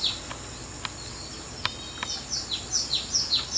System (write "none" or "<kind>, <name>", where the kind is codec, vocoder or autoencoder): none